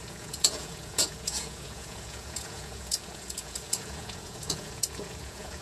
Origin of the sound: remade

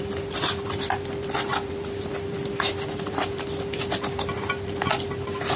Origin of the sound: remade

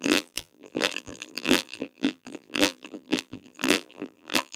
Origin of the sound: remade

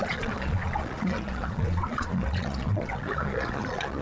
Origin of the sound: remade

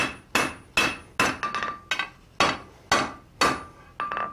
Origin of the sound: recorded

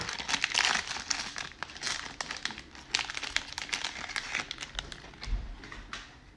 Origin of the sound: recorded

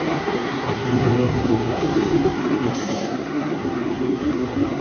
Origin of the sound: remade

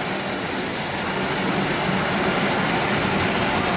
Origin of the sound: recorded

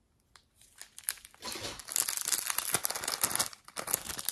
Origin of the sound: recorded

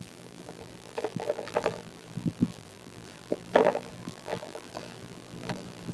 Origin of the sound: remade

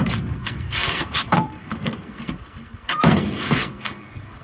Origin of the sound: remade